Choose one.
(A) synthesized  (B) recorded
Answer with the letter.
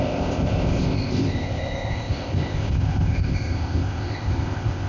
A